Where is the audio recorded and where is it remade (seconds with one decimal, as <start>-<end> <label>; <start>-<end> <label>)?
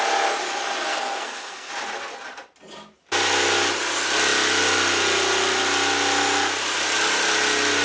0.0-0.9 recorded; 0.9-1.7 remade; 1.7-7.8 recorded